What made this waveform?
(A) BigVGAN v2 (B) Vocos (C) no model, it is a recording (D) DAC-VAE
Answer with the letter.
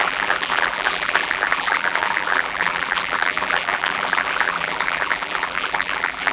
A